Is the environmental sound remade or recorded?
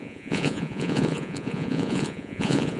remade